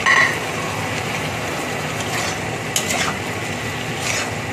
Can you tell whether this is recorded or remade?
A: recorded